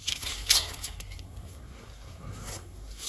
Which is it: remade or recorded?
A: remade